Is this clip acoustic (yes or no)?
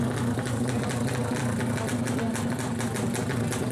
yes